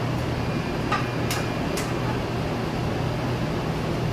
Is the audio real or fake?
real